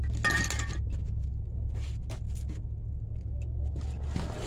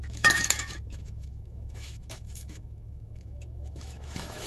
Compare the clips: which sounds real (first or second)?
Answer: first